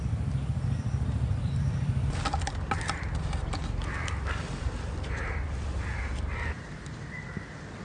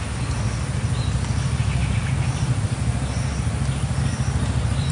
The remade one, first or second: first